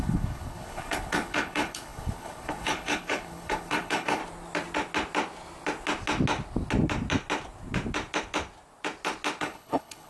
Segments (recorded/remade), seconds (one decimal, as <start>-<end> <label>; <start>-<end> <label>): 0.0-4.2 remade; 4.2-9.4 recorded; 9.4-10.1 remade